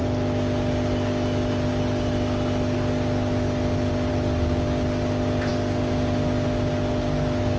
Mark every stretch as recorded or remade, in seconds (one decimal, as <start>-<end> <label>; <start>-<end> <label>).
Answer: 0.0-7.6 recorded